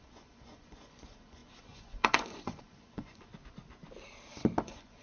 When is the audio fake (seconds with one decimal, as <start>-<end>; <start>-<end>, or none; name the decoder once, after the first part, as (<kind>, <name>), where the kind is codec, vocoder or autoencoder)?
0.0-3.3 (vocoder, Vocos); 4.6-5.0